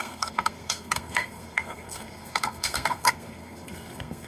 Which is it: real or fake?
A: fake